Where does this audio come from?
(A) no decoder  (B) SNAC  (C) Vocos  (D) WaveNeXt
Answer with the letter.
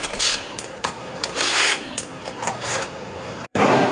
B